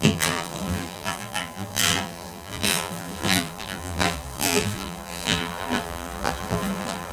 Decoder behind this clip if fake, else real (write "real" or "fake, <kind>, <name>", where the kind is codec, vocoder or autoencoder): fake, vocoder, BigVGAN v2